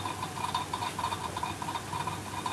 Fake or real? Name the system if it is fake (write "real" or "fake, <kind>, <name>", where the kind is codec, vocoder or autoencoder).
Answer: real